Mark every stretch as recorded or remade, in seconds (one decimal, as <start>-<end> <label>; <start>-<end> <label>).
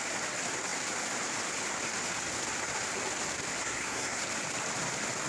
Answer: 0.0-3.6 recorded; 3.6-4.2 remade; 4.2-5.3 recorded